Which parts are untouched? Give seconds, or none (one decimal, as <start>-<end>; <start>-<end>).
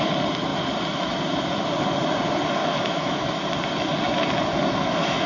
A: 0.0-2.6; 3.3-5.3